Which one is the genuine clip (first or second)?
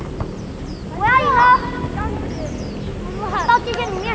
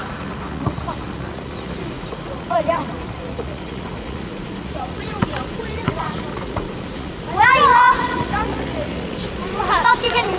first